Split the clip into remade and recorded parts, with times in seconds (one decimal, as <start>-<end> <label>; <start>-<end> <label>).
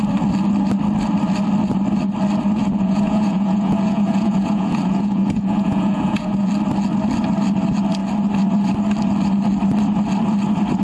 0.0-2.6 recorded; 2.6-6.5 remade; 6.5-10.8 recorded